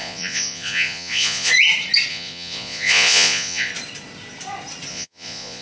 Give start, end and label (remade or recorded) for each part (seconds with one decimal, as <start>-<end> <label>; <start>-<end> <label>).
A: 0.0-1.5 remade; 1.5-2.1 recorded; 2.1-3.7 remade; 3.7-4.9 recorded; 4.9-5.6 remade